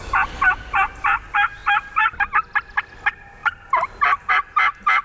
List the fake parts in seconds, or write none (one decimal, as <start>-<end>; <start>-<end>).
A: none

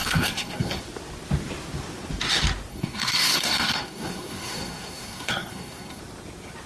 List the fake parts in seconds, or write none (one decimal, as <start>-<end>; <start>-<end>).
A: 0.0-0.8; 2.7-6.0

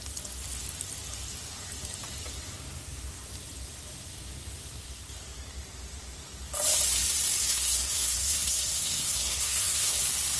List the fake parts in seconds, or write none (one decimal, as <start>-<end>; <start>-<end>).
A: 7.4-10.0

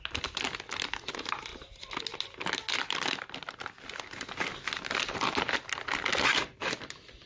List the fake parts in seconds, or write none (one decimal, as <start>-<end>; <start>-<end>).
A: none

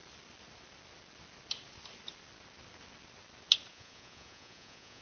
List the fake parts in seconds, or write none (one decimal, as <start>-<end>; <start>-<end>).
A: 3.7-5.0

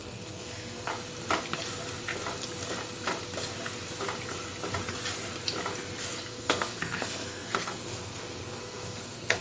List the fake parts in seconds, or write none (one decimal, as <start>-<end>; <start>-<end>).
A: 0.0-0.9; 6.2-9.4